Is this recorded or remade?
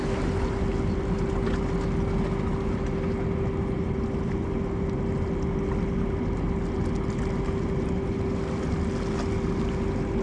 recorded